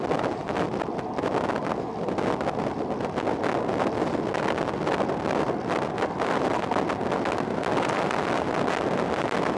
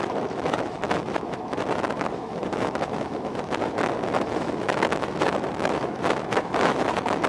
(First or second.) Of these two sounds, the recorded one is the first